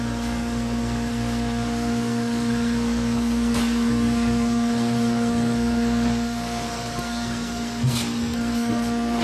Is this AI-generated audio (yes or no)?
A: yes